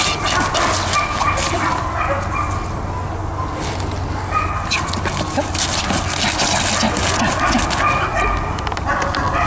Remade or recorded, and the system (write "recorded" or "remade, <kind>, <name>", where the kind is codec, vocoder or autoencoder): recorded